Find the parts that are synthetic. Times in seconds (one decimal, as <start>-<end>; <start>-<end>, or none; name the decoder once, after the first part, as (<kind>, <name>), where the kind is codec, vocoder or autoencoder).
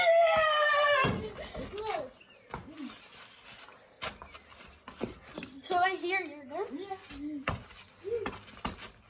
none